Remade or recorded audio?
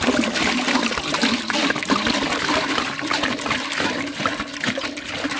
recorded